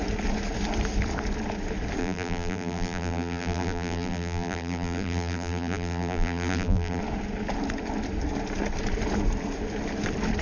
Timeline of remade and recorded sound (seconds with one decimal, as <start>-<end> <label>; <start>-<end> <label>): 0.0-2.0 recorded; 2.0-7.0 remade; 7.0-10.4 recorded